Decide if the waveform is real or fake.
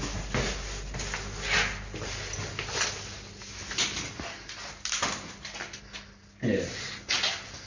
real